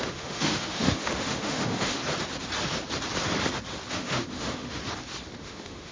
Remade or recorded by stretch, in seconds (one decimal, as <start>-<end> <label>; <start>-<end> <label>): 0.0-2.0 remade; 2.0-3.9 recorded; 3.9-4.8 remade; 4.8-5.4 recorded; 5.4-5.9 remade